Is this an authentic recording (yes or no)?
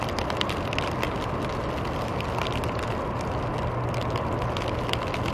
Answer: yes